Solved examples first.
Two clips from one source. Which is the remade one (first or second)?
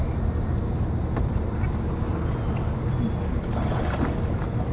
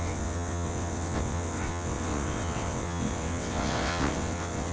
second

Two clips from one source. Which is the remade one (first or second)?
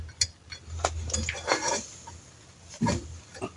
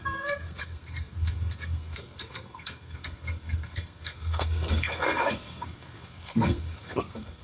second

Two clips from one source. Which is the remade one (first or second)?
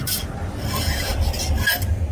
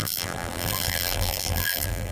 second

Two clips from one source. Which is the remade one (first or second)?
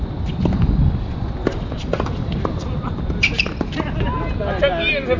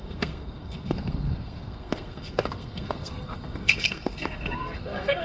second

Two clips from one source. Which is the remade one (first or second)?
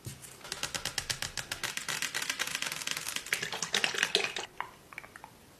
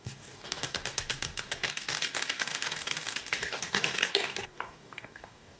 second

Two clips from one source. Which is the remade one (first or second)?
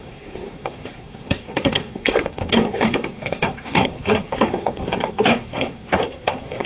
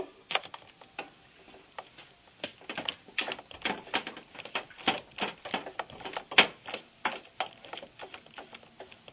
first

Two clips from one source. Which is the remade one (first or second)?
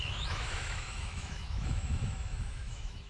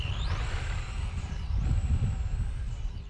first